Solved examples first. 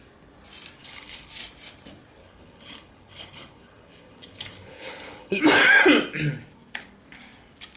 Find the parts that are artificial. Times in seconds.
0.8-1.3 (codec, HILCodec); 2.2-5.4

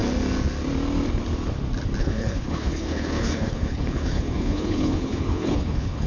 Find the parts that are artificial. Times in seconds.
2.0-6.1 (codec, HILCodec)

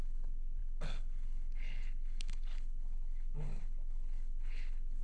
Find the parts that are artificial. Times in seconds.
0.0-5.0 (codec, HILCodec)

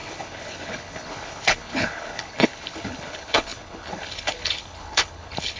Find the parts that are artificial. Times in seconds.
0.0-5.6 (codec, HILCodec)

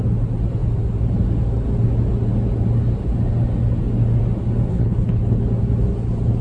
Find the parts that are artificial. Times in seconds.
4.7-5.4 (codec, HILCodec)

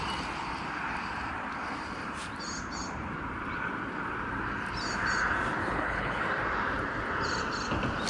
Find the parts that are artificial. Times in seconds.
5.6-6.2 (codec, HILCodec)

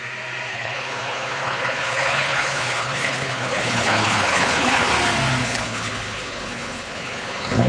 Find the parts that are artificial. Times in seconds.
0.5-4.9 (codec, HILCodec); 5.4-7.7